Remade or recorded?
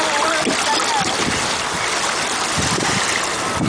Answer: recorded